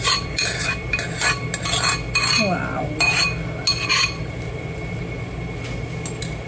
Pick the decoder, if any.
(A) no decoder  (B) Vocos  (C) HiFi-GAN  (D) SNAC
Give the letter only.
A